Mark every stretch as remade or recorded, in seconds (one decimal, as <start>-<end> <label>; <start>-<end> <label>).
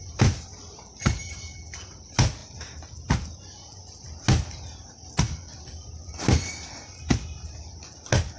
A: 0.0-8.4 recorded